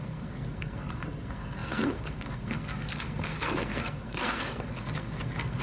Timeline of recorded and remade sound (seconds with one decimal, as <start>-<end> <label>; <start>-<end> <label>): 0.0-5.6 remade

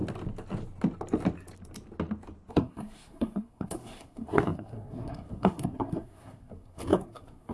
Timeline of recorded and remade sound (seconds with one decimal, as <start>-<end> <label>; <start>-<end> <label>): 0.0-2.5 recorded; 2.5-7.5 remade

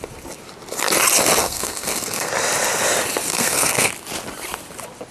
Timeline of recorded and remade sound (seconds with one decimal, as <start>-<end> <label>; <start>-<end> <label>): 0.0-1.4 recorded; 1.4-2.3 remade; 2.3-3.3 recorded; 3.3-3.9 remade; 3.9-5.1 recorded